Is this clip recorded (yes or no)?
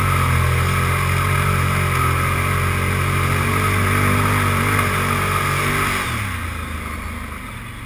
yes